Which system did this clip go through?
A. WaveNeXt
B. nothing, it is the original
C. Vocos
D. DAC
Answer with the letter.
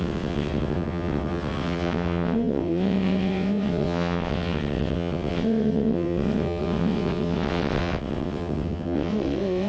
A